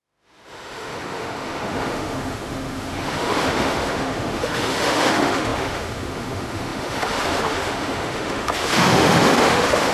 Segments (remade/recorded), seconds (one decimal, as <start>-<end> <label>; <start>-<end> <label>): 0.0-9.9 remade